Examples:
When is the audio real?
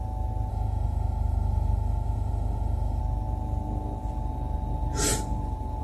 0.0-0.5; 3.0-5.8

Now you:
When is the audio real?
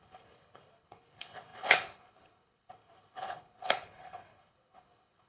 none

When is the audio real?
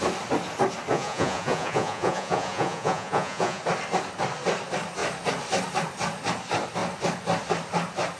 0.0-0.9; 3.6-8.2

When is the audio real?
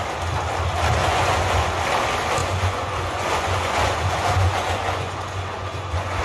0.0-1.0; 1.8-2.4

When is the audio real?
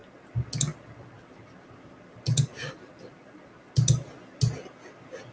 0.0-5.3